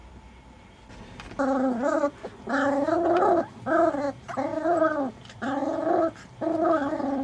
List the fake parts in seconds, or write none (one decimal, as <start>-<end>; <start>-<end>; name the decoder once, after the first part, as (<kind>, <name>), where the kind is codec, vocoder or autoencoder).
0.0-3.4 (vocoder, BigVGAN v2); 4.5-5.6

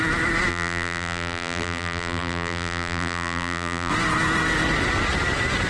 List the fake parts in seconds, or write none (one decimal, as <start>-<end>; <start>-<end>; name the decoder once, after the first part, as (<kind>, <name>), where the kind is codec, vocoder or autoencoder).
0.5-3.9 (vocoder, BigVGAN v2)

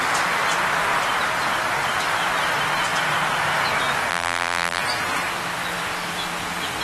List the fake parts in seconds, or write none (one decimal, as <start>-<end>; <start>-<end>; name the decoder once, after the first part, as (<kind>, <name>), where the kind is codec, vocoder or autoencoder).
4.1-4.8 (vocoder, BigVGAN v2)

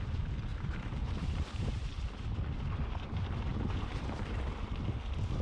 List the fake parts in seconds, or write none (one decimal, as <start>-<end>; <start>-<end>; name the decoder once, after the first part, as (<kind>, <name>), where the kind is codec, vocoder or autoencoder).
0.5-1.7 (vocoder, BigVGAN v2); 3.5-4.4

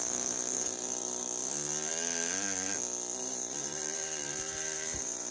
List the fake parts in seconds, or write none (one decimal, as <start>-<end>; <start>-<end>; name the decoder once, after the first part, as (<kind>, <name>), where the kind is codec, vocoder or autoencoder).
0.0-1.4 (vocoder, BigVGAN v2); 3.2-5.3

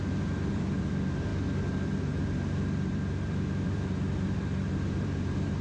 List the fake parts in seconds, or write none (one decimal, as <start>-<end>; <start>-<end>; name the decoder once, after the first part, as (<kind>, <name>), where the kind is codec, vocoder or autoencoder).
0.0-5.6 (vocoder, BigVGAN v2)